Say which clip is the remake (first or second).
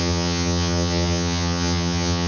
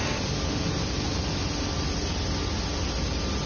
first